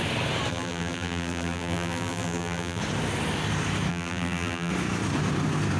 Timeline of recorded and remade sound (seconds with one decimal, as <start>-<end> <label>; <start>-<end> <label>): 0.0-0.5 recorded; 0.5-2.8 remade; 2.8-3.9 recorded; 3.9-4.7 remade; 4.7-5.8 recorded